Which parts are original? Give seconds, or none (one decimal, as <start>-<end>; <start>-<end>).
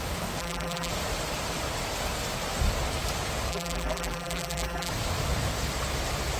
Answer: 0.0-0.4; 0.9-3.5; 4.9-6.4